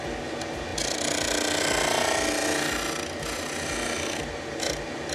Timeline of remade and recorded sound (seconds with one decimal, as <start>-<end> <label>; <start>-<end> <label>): 0.0-5.1 recorded